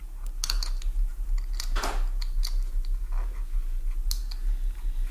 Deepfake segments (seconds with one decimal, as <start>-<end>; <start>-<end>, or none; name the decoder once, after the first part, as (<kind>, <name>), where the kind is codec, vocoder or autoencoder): none